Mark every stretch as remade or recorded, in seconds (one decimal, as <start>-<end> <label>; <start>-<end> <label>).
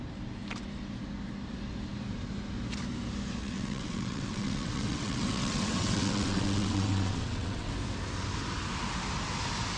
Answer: 0.0-3.4 recorded; 3.4-7.7 remade; 7.7-9.8 recorded